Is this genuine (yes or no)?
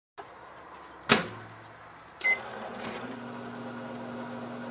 yes